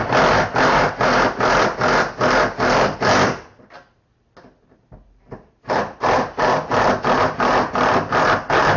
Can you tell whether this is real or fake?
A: real